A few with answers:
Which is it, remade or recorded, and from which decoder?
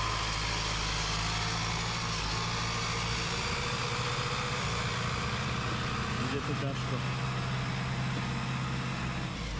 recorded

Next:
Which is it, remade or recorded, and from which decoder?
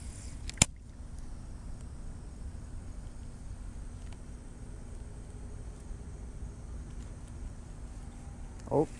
recorded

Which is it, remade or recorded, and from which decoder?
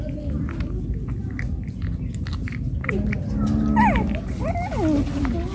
recorded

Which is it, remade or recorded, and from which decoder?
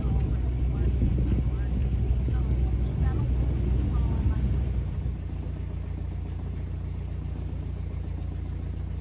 recorded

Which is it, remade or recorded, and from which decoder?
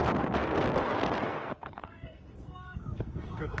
remade, codec, SNAC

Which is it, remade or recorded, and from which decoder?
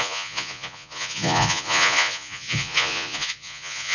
remade, vocoder, Vocos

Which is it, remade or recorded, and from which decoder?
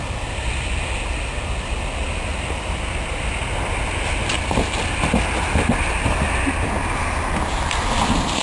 recorded